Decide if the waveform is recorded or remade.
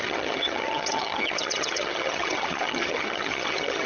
remade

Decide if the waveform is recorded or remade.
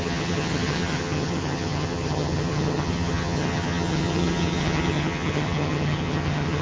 remade